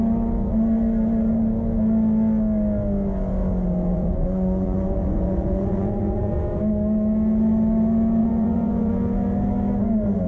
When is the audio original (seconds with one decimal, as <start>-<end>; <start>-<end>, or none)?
0.0-3.9; 6.6-8.2; 8.9-10.3